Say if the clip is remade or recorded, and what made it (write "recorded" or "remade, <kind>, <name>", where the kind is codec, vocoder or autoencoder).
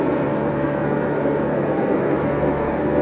remade, codec, SNAC